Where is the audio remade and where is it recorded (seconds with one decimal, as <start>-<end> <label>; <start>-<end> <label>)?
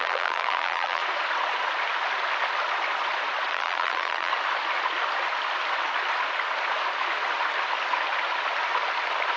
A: 0.0-1.0 remade; 1.0-3.5 recorded; 3.5-4.3 remade; 4.3-9.4 recorded